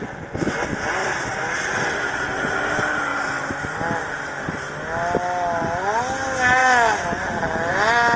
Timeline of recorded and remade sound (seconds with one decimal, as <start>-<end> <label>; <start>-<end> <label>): 0.0-8.2 recorded